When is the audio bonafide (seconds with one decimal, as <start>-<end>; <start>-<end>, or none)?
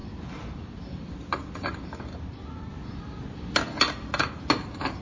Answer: 2.0-2.7; 3.8-5.0